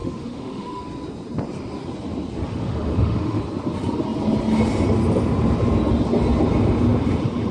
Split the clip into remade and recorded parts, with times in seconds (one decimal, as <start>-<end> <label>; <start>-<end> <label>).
0.0-0.8 remade; 0.8-2.5 recorded; 2.5-3.4 remade; 3.4-7.5 recorded